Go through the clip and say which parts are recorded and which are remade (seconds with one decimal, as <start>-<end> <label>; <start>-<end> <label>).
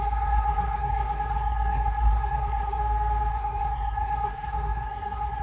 0.0-2.8 remade; 2.8-3.3 recorded; 3.3-5.4 remade